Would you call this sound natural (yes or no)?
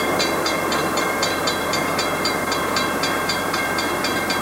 no